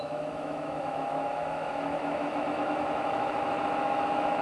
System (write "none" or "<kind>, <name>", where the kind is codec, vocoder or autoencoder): autoencoder, DAC-VAE